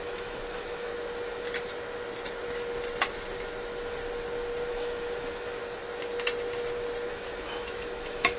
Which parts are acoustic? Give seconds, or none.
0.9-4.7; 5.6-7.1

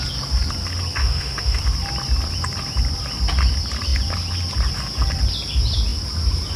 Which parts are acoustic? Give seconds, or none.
0.0-1.0; 1.6-6.6

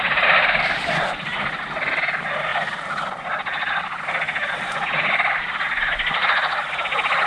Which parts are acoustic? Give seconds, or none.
0.0-7.3